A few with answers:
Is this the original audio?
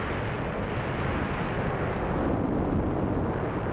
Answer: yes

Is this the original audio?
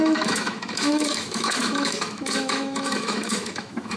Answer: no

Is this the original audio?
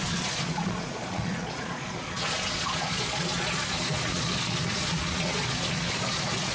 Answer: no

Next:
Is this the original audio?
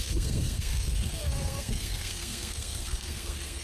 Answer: no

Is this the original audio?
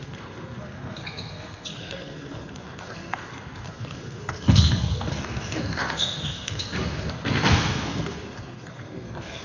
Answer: no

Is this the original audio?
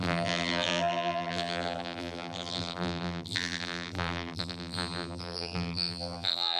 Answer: no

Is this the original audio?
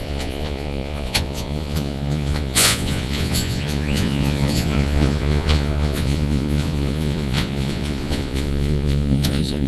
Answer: no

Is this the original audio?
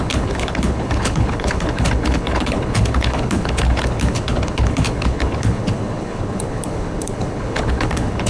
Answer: no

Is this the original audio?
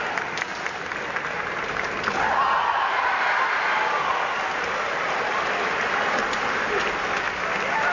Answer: yes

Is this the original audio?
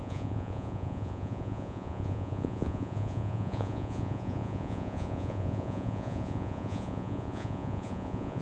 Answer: no